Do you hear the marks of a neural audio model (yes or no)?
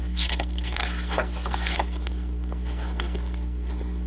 yes